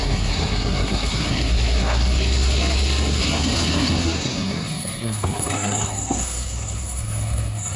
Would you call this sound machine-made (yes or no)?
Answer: yes